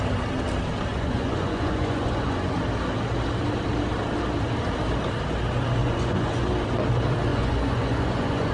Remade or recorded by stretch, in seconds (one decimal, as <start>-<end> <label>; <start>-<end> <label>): 0.0-0.9 recorded; 0.9-2.5 remade; 2.5-5.8 recorded; 5.8-6.5 remade; 6.5-7.3 recorded; 7.3-8.5 remade